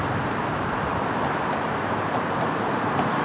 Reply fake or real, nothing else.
fake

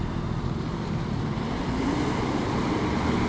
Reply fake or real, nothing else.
real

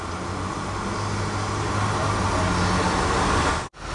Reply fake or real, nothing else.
real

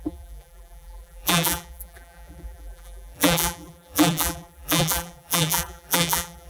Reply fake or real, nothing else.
fake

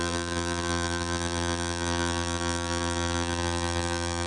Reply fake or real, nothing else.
fake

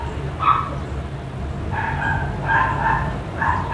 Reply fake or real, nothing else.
real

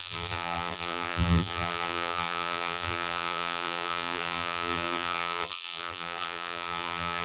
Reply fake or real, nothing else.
fake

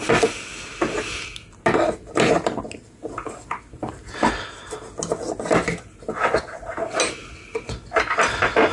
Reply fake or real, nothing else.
real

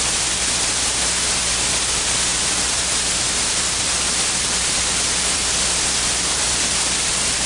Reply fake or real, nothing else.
fake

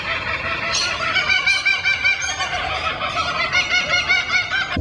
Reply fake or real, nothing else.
fake